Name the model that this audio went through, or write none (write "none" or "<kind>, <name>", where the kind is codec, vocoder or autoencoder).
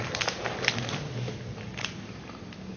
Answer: none